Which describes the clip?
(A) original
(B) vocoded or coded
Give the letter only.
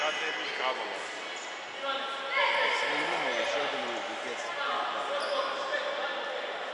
A